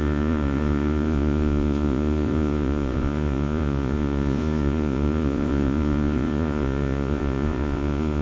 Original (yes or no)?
no